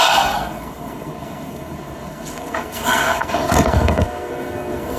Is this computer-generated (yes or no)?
yes